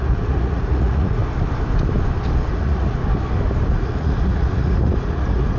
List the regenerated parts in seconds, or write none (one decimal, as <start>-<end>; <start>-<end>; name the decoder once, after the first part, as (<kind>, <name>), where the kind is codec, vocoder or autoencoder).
0.0-1.2 (vocoder, Vocos); 2.5-3.0; 3.7-5.6